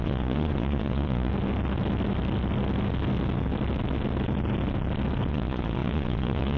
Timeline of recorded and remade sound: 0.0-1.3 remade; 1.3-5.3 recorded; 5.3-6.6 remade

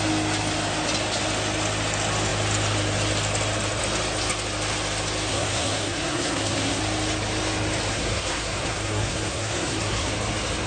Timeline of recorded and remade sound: 0.0-5.3 recorded; 5.3-6.8 remade; 6.8-7.9 recorded; 7.9-10.1 remade; 10.1-10.7 recorded

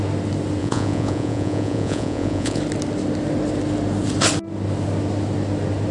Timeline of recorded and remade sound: 0.0-0.6 recorded; 0.6-2.6 remade; 2.6-5.9 recorded

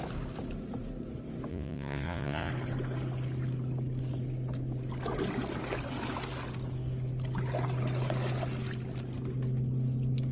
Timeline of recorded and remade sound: 0.0-1.5 recorded; 1.5-2.5 remade; 2.5-10.3 recorded

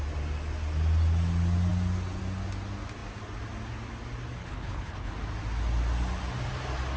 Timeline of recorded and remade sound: 0.0-4.4 recorded; 4.4-5.1 remade; 5.1-7.0 recorded